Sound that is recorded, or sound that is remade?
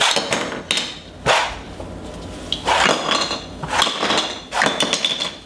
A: recorded